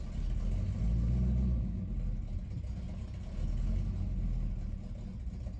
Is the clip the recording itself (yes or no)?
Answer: yes